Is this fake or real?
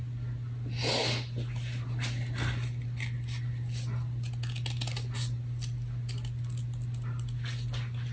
real